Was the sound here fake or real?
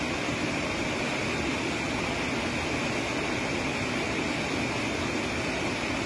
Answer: real